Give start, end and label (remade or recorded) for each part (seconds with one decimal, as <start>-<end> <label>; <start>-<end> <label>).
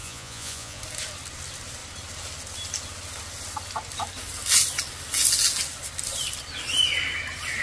0.0-0.8 remade; 0.8-7.6 recorded